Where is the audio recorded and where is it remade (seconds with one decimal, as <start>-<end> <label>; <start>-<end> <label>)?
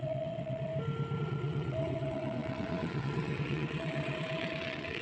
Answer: 0.0-0.7 remade; 0.7-1.2 recorded; 1.2-5.0 remade